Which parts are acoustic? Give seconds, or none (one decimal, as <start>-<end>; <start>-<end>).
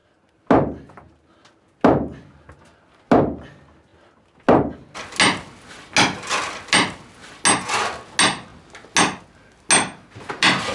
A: 0.0-10.7